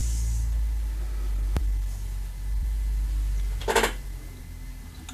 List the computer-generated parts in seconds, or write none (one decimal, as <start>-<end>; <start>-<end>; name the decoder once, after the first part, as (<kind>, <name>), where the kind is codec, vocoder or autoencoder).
2.6-4.4 (vocoder, BigVGAN v2)